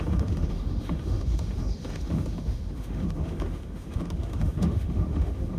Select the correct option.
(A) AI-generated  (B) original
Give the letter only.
A